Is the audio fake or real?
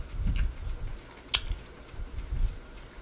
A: real